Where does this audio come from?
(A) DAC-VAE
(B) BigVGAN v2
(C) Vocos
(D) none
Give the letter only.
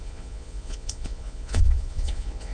C